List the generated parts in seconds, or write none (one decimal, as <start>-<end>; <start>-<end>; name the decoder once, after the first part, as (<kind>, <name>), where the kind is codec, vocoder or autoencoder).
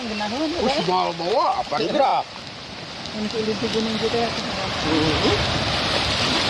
none